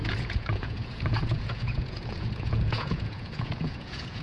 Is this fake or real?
fake